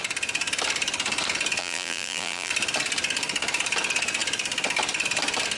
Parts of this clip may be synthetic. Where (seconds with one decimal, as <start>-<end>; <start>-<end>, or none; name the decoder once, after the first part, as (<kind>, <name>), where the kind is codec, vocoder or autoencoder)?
1.6-2.5 (vocoder, BigVGAN v2)